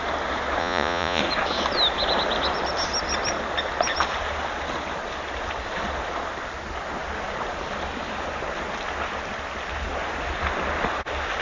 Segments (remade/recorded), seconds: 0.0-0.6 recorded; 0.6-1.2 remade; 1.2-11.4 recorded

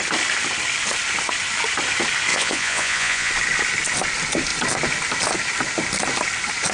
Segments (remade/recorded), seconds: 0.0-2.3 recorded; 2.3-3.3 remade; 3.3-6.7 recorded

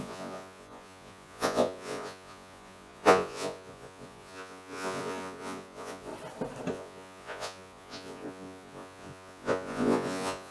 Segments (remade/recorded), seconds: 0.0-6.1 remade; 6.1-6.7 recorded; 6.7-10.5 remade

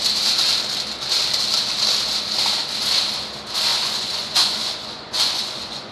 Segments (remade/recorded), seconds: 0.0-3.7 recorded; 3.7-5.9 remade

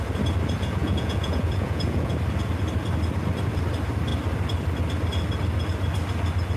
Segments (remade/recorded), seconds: 0.0-0.8 recorded; 0.8-2.1 remade; 2.1-6.6 recorded

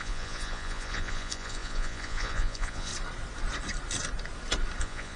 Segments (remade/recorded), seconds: 0.0-2.9 remade; 2.9-4.8 recorded; 4.8-5.2 remade